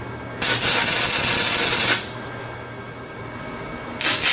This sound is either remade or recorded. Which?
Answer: recorded